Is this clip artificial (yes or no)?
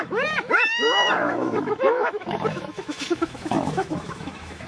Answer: yes